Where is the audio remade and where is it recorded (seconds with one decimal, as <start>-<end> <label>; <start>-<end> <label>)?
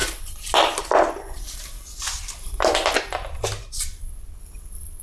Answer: 0.0-5.0 recorded